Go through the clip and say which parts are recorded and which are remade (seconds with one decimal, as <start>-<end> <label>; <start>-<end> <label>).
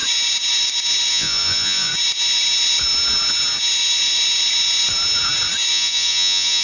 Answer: 0.0-1.1 recorded; 1.1-1.9 remade; 1.9-5.7 recorded; 5.7-6.6 remade